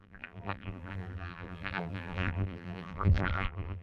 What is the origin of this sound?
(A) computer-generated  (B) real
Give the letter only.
A